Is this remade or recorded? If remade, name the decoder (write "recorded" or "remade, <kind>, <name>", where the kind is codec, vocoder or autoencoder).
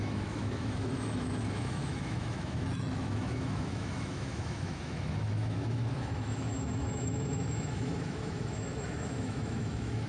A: remade, autoencoder, DAC-VAE